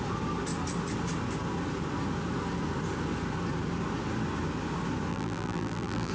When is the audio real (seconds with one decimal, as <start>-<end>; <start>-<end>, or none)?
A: 0.0-5.1

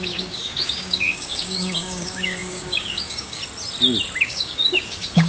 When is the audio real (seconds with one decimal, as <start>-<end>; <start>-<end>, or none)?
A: 3.4-4.2

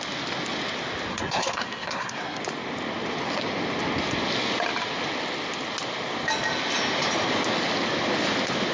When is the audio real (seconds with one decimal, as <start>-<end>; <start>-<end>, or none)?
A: 0.0-1.1; 2.4-8.7

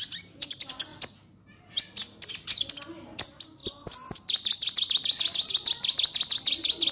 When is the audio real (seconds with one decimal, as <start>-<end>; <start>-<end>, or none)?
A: 0.0-6.9

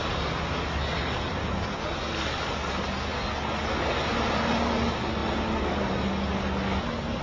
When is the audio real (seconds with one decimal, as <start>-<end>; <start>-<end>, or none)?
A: 0.0-7.2

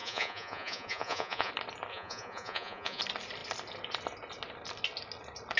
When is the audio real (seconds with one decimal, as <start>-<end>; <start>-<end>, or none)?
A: 1.5-1.9; 3.0-5.6